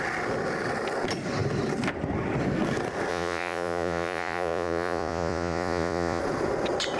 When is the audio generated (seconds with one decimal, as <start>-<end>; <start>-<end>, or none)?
3.1-6.2